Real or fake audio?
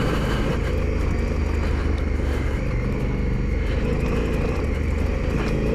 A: real